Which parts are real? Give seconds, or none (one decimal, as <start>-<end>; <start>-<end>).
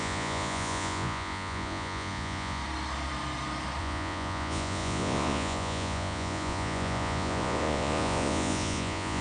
2.6-3.8